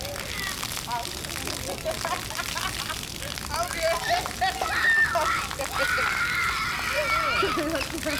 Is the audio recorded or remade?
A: recorded